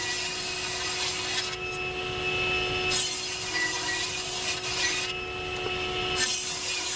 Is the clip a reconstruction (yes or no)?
no